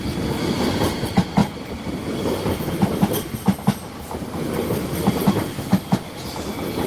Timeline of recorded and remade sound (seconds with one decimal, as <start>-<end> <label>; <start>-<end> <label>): 0.0-6.9 recorded